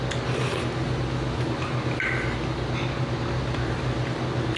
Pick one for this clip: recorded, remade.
recorded